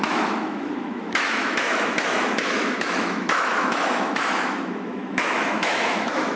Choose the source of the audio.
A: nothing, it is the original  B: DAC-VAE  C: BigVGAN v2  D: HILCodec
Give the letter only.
B